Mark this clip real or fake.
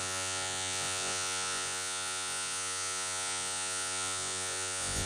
fake